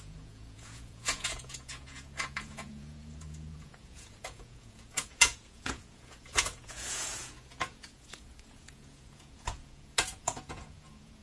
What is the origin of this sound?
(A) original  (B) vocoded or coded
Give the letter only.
B